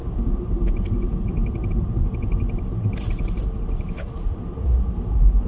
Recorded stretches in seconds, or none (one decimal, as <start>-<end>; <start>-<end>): 0.0-5.5